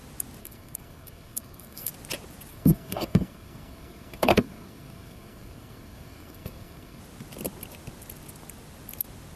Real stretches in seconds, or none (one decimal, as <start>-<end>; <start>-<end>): 0.0-0.4; 1.9-2.5; 7.0-9.4